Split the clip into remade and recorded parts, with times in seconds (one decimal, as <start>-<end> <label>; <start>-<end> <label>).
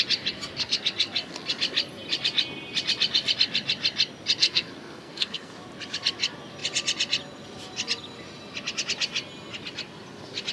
0.0-4.4 recorded; 4.4-5.5 remade; 5.5-10.5 recorded